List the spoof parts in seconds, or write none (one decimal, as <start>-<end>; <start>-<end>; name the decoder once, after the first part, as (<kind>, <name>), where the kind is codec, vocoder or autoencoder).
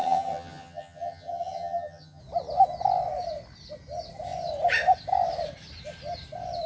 0.0-2.2 (vocoder, HiFi-GAN)